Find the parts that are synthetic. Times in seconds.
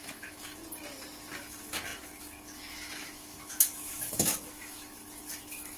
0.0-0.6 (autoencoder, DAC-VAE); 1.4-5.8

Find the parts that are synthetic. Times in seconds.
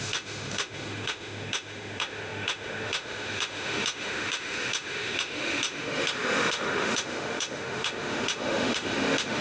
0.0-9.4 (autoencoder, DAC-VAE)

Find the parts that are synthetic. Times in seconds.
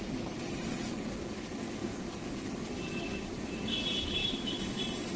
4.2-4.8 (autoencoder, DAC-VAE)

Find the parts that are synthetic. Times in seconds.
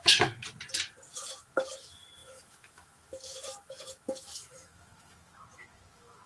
0.0-0.4 (autoencoder, DAC-VAE); 1.1-6.3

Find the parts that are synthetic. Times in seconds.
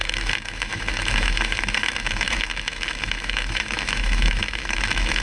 0.0-5.2 (autoencoder, DAC-VAE)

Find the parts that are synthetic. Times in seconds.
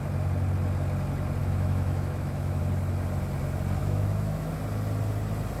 1.4-2.6 (autoencoder, DAC-VAE); 3.8-4.5